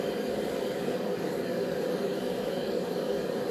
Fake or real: fake